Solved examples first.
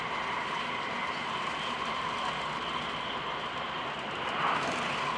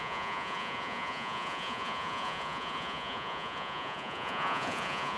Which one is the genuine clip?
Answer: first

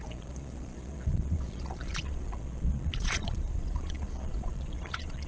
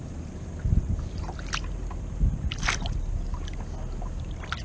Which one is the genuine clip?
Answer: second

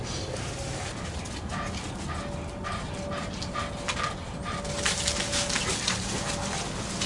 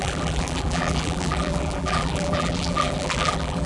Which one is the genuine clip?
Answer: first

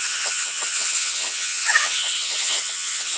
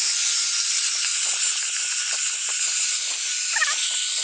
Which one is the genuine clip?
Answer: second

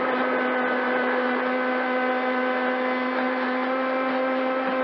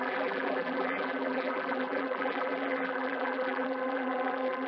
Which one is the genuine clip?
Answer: first